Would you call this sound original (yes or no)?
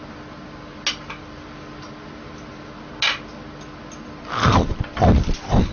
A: yes